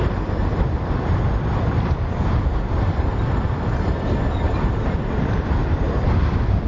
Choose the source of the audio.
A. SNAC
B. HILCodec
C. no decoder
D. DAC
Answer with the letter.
C